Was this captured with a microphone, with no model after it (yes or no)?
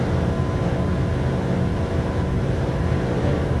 yes